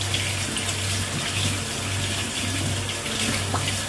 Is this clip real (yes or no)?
yes